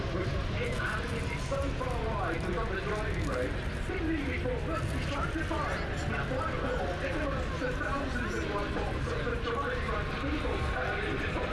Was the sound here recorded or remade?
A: recorded